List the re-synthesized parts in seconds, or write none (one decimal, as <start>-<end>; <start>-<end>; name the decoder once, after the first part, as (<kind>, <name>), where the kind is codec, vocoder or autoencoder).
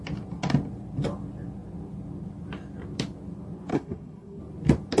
3.7-4.4 (codec, SNAC)